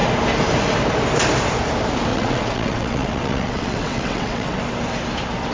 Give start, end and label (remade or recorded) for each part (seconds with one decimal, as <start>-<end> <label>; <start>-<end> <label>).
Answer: 0.0-2.1 recorded; 2.1-4.6 remade; 4.6-5.5 recorded